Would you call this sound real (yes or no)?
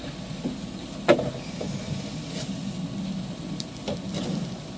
yes